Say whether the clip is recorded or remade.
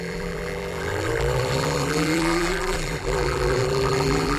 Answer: remade